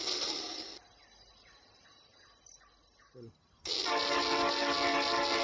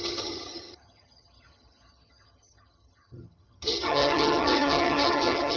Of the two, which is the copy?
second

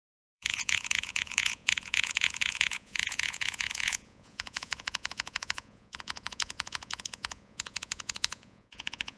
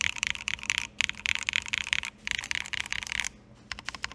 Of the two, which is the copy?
first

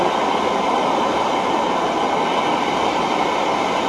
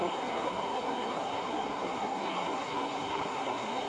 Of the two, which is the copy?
second